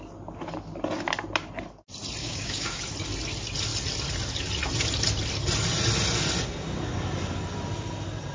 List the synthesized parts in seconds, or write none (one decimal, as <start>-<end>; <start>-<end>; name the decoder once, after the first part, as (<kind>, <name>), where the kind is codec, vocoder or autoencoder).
2.2-2.8 (codec, DAC)